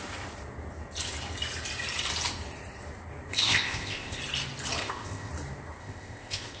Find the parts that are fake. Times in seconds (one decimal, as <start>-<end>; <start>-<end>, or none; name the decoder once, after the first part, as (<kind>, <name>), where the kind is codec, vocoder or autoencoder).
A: 3.3-4.2 (codec, ZipCodec); 4.8-5.3; 5.8-6.6